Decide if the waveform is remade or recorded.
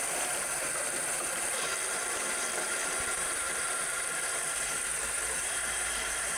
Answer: remade